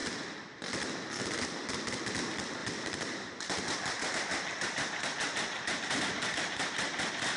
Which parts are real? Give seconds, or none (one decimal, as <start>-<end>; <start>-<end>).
0.0-2.6; 6.0-7.4